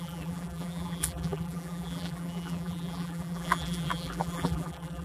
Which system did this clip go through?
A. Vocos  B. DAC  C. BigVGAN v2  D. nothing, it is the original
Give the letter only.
C